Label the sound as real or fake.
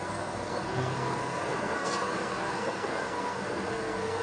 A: fake